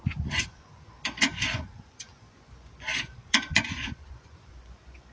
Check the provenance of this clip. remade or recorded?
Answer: remade